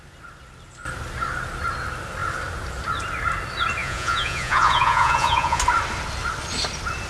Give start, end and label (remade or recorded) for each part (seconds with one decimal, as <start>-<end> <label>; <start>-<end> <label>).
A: 0.0-3.8 recorded; 3.8-5.6 remade; 5.6-7.1 recorded